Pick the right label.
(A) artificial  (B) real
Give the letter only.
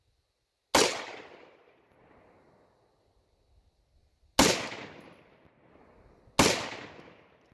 B